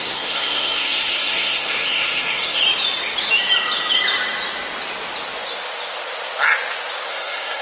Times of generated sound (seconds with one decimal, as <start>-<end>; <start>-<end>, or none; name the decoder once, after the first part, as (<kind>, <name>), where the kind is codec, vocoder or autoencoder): 0.0-2.6 (codec, SNAC); 7.1-7.6